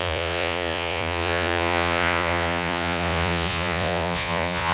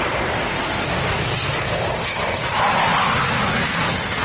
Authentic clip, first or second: second